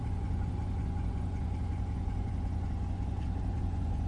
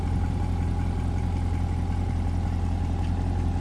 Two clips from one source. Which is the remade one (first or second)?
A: first